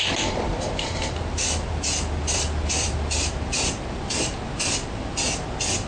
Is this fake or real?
real